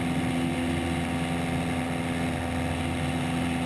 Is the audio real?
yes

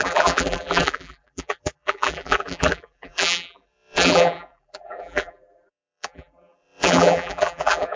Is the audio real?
no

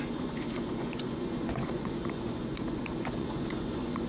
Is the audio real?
no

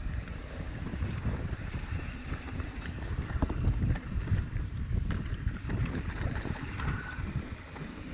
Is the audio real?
no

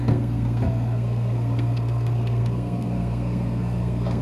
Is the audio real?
no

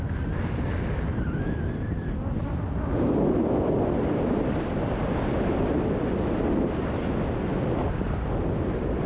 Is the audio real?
no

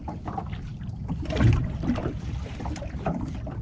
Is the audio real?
yes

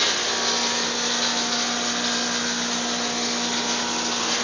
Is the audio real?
yes